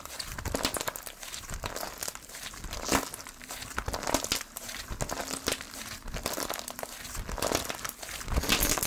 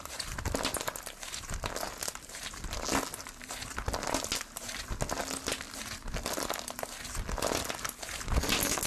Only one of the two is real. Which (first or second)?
second